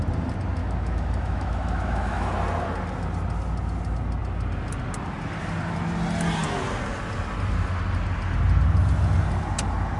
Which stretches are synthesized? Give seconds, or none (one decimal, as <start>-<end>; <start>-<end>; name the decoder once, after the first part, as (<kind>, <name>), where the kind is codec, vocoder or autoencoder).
0.6-2.3 (autoencoder, DAC-VAE)